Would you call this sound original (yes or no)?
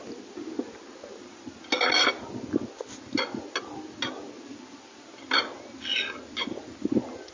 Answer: yes